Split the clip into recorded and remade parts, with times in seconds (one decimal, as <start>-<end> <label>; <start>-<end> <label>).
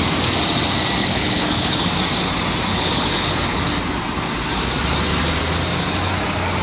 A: 0.0-1.0 recorded; 1.0-1.9 remade; 1.9-2.7 recorded; 2.7-3.6 remade; 3.6-6.6 recorded